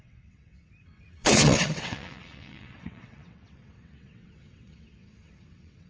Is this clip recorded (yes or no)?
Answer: no